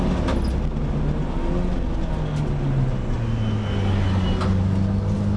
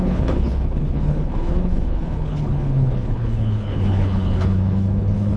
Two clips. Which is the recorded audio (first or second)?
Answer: first